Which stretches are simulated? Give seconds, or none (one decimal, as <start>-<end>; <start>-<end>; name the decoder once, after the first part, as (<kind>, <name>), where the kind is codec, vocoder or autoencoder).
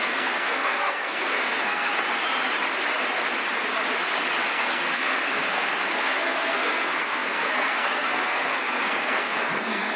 0.0-1.9 (codec, SNAC); 4.5-10.0